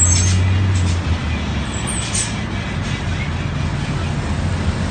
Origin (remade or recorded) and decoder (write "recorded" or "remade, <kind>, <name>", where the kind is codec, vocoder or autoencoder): recorded